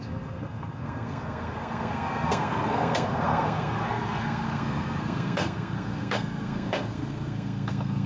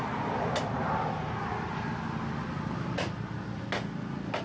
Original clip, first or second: second